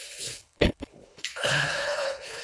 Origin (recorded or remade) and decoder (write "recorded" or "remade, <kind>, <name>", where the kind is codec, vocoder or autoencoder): remade, codec, HILCodec